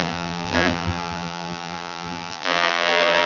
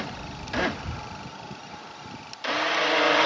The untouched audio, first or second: second